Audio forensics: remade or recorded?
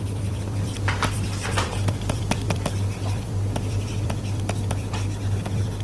remade